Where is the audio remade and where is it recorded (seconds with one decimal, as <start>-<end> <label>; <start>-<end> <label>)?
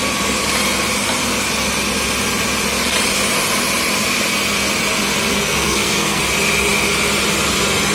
0.0-5.3 recorded; 5.3-6.2 remade; 6.2-7.9 recorded